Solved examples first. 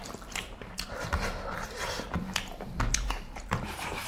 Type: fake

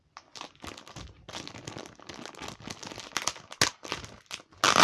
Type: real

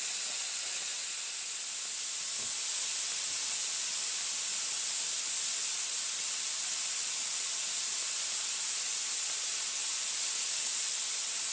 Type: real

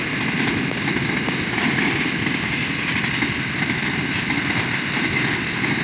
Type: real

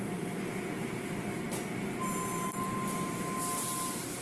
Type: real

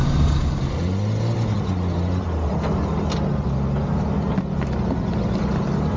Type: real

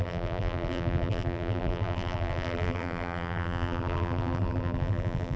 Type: fake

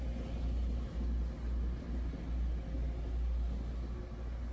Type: real